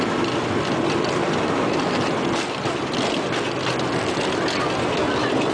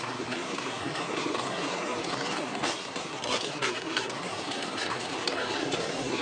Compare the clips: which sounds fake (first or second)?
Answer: second